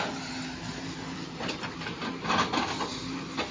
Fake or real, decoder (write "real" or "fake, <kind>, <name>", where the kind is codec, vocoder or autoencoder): real